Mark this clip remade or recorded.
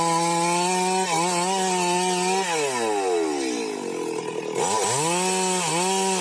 recorded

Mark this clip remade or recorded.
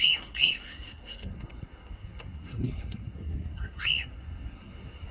remade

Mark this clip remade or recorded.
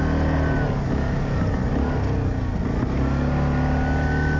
recorded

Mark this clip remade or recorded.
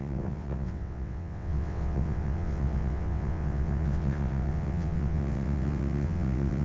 remade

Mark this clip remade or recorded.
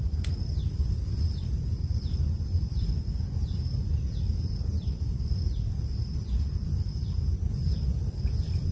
recorded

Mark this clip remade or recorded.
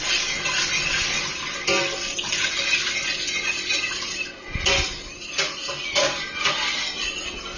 recorded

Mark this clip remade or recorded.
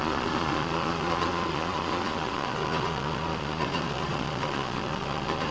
remade